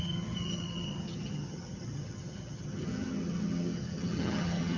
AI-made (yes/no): yes